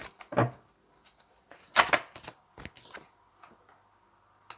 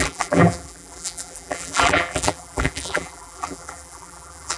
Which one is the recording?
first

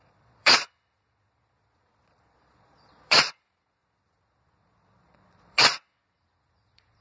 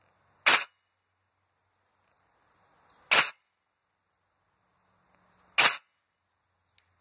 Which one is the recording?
second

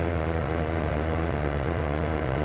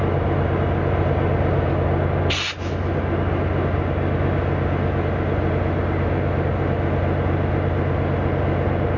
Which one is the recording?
second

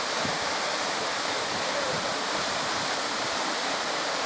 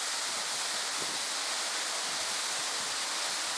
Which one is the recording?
second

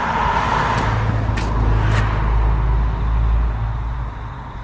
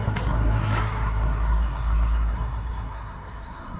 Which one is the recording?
first